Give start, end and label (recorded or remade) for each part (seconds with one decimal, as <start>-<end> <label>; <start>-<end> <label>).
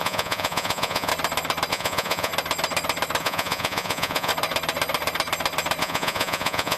0.0-1.1 remade; 1.1-1.7 recorded; 1.7-2.3 remade; 2.3-3.2 recorded; 3.2-4.3 remade; 4.3-5.8 recorded; 5.8-6.8 remade